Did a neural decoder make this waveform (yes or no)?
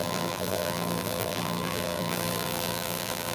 yes